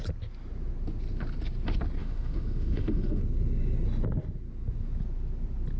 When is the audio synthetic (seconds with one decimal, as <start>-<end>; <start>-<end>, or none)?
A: 2.0-3.2